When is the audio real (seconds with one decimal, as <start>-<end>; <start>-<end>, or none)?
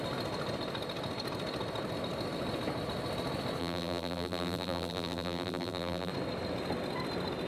0.0-3.6; 6.1-7.5